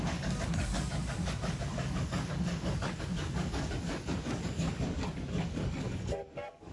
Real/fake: fake